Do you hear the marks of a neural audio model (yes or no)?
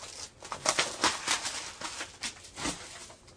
no